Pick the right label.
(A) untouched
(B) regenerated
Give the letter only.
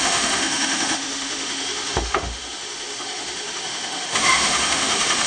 B